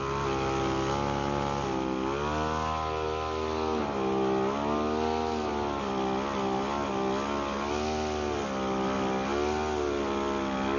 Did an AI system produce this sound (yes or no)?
no